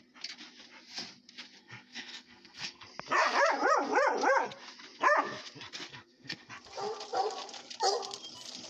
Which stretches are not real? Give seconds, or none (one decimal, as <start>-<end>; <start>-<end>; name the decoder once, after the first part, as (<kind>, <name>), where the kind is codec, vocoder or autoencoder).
1.6-2.9 (codec, SNAC); 5.9-6.5